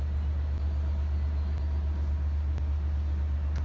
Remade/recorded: recorded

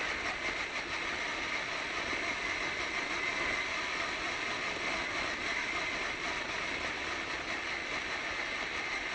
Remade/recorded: recorded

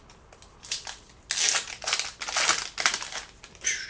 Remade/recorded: recorded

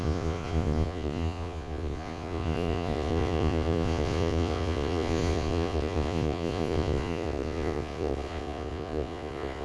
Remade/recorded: remade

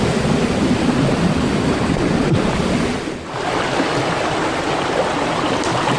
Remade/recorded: recorded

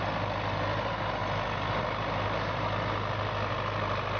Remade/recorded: recorded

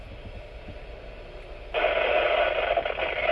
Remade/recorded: recorded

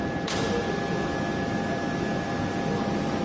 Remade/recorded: recorded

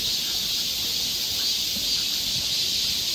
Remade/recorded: recorded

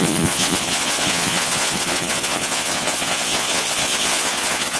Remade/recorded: remade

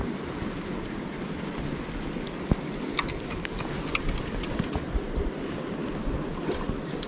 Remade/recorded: recorded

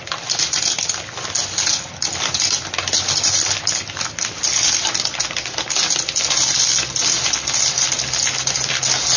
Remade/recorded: recorded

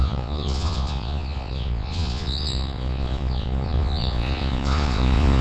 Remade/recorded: remade